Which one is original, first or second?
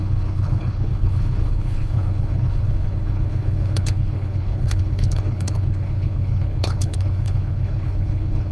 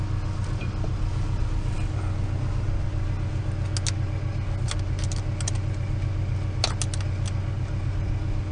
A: second